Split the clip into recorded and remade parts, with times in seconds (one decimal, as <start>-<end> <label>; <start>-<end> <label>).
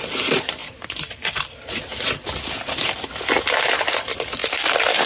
0.0-5.1 recorded